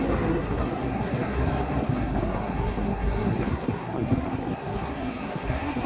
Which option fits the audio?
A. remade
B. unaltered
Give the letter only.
A